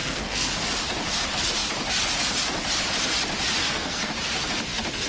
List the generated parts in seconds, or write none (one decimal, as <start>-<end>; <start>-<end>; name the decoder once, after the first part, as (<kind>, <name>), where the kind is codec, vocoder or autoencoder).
0.0-0.5 (codec, SNAC); 3.6-4.1